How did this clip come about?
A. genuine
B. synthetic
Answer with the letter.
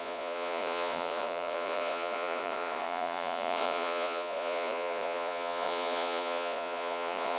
B